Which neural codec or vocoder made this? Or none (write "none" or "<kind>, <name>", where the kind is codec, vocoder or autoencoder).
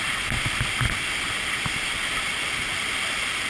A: none